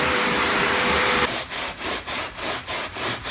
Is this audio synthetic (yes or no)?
yes